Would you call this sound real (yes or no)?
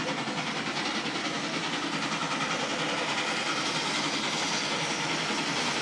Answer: yes